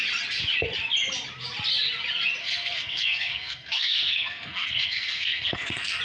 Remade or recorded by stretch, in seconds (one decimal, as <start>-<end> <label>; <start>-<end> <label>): 0.0-2.4 recorded; 2.4-6.0 remade